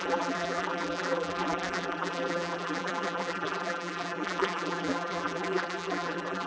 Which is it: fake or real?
fake